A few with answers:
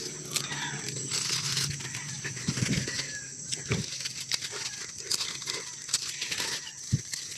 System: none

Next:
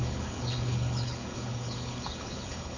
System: codec, HILCodec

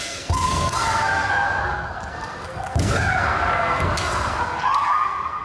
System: codec, SNAC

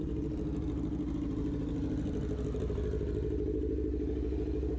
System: none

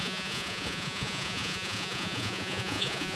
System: vocoder, Vocos